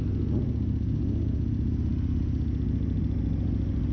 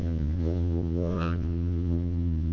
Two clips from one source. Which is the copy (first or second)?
second